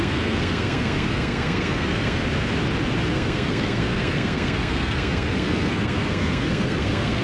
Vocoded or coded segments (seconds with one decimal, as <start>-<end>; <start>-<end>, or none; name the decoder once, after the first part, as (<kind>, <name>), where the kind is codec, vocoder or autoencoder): 0.0-2.2 (codec, SNAC); 3.1-7.2